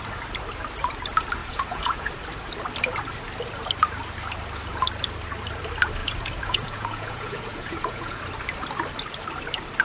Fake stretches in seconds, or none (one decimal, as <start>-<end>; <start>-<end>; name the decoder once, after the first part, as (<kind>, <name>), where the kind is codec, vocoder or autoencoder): 1.4-2.1 (vocoder, Vocos); 6.0-8.2